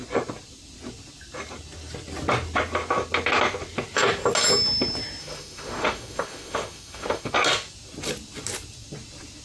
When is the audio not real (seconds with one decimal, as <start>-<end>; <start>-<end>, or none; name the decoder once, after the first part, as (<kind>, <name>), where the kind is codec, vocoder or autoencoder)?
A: 5.2-7.3 (autoencoder, DAC-VAE)